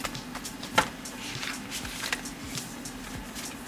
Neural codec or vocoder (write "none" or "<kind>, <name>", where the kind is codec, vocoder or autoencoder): none